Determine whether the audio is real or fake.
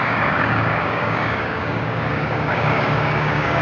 fake